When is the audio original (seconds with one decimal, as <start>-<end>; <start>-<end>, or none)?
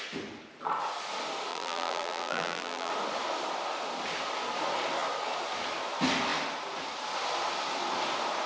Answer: 0.0-1.5; 2.9-8.5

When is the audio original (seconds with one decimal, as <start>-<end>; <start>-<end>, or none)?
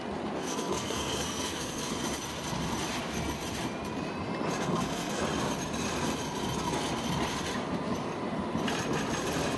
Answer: 0.0-0.4; 1.9-4.6; 5.2-9.6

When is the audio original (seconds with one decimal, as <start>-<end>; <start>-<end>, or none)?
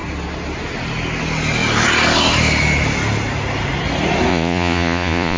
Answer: 0.0-4.3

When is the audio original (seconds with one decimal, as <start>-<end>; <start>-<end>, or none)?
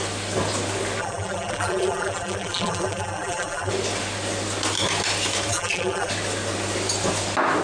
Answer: 0.0-1.0; 3.7-5.5; 6.1-7.6